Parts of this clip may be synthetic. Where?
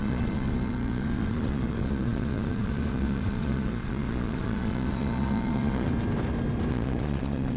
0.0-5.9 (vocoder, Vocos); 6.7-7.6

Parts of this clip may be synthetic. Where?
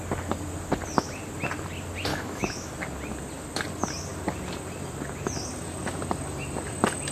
2.1-2.7 (autoencoder, DAC-VAE)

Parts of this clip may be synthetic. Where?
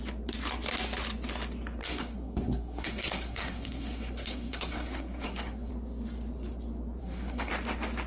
1.8-5.7 (codec, SNAC); 7.0-7.5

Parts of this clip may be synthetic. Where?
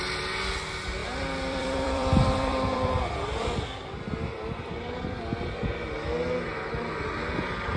1.0-5.2 (vocoder, BigVGAN v2)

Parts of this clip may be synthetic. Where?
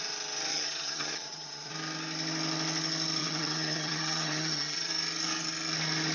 0.5-1.7 (vocoder, HiFi-GAN); 3.2-4.9